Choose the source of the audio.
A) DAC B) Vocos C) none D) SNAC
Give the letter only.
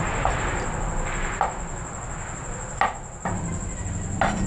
C